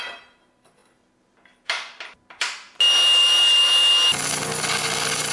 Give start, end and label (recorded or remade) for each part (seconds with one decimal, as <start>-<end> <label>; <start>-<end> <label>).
0.0-5.3 recorded